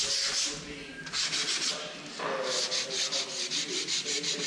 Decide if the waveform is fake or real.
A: real